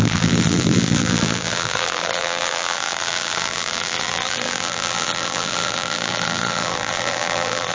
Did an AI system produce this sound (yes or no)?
yes